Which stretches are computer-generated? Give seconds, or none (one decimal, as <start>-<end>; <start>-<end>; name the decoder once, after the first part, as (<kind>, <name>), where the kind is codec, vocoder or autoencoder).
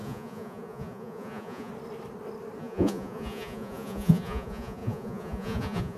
0.0-1.7 (vocoder, Vocos); 2.6-6.0